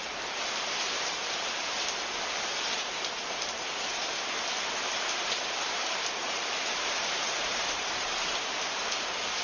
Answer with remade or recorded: remade